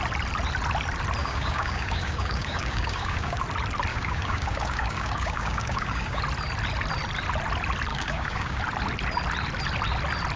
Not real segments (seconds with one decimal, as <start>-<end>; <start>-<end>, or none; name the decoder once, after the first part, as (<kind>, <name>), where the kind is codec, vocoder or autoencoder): 1.2-3.4 (codec, DAC); 3.9-6.2; 7.9-8.6